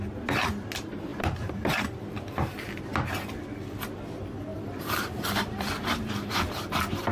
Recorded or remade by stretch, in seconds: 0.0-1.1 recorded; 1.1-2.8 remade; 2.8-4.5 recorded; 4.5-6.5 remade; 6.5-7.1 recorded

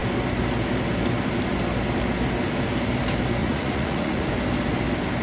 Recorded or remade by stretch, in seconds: 0.0-3.4 recorded; 3.4-4.3 remade; 4.3-5.2 recorded